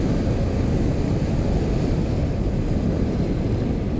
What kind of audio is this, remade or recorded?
recorded